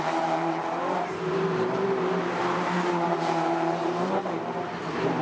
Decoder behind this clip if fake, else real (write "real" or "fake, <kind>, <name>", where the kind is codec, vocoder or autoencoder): fake, vocoder, BigVGAN v2